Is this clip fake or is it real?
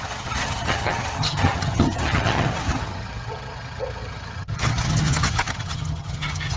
fake